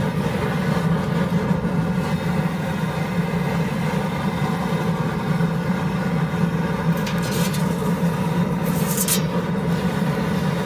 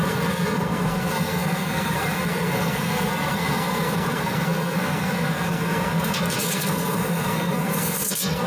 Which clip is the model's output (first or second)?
second